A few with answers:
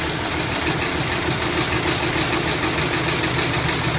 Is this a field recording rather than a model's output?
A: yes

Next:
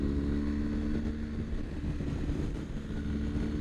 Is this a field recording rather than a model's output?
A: yes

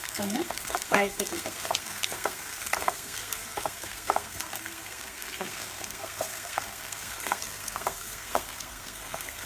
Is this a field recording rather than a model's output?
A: no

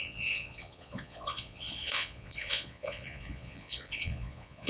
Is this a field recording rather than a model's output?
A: no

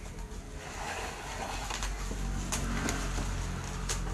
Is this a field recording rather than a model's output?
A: yes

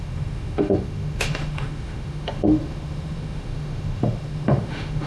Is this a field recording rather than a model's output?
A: no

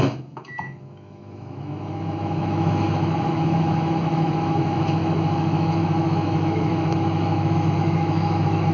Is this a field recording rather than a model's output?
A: no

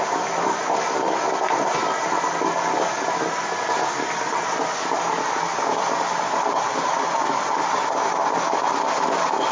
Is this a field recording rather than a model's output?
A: yes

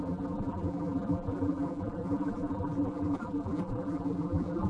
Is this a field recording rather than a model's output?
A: no